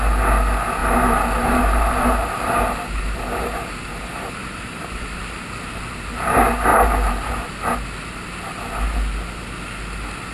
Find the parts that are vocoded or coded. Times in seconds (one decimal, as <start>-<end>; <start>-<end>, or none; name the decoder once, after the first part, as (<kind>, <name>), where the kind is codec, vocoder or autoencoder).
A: 0.8-5.2 (vocoder, BigVGAN v2); 6.7-7.5